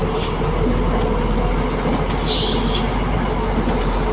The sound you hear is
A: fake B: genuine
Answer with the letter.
B